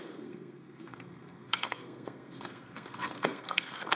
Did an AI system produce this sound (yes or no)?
yes